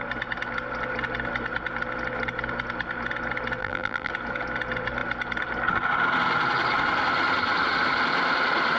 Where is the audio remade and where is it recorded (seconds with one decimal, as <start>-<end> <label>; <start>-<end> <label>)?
0.0-3.6 recorded; 3.6-4.1 remade; 4.1-8.8 recorded

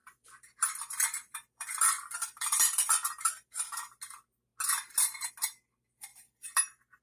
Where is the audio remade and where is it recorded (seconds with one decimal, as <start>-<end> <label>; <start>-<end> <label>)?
0.0-3.6 remade; 3.6-6.1 recorded; 6.1-7.0 remade

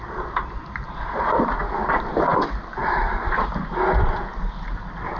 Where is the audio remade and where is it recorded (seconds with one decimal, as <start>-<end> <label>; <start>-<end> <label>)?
0.0-5.2 recorded

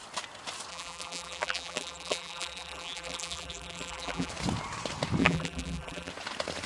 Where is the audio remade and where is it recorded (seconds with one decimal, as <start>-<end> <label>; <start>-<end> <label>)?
0.0-0.7 recorded; 0.7-4.3 remade; 4.3-5.2 recorded; 5.2-6.1 remade; 6.1-6.7 recorded

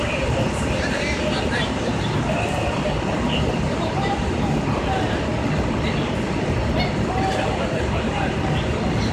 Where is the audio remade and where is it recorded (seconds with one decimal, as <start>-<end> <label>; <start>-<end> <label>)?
0.0-5.3 remade; 5.3-6.0 recorded; 6.0-6.6 remade; 6.6-7.8 recorded; 7.8-9.1 remade

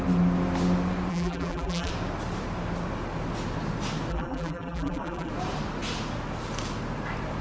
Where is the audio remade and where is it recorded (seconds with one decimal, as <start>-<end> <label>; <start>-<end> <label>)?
0.0-1.1 recorded; 1.1-1.9 remade; 1.9-4.1 recorded; 4.1-5.3 remade; 5.3-7.4 recorded

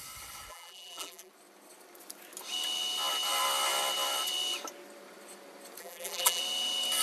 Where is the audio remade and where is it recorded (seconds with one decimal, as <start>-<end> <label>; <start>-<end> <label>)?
0.0-0.5 recorded; 0.5-1.3 remade; 1.3-5.8 recorded; 5.8-6.4 remade; 6.4-7.0 recorded

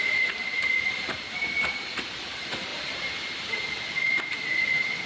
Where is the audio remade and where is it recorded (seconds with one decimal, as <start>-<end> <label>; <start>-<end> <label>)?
0.0-5.1 recorded